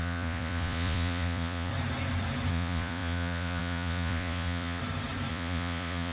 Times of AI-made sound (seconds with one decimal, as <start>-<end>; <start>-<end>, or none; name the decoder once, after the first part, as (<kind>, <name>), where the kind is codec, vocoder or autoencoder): 0.0-1.7 (vocoder, Vocos); 2.5-4.8; 5.3-6.1